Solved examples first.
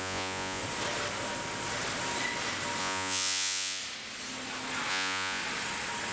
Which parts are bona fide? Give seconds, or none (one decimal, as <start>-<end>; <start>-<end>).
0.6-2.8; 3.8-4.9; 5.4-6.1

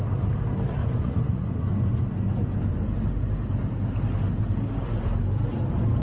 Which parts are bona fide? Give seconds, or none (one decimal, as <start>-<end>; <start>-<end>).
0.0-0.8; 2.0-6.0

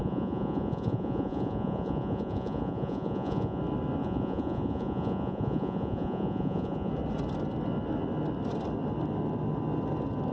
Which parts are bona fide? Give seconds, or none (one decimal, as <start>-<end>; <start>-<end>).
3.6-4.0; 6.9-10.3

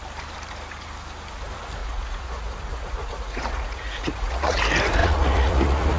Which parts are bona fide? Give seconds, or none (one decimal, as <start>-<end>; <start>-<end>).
0.0-1.8; 4.6-5.0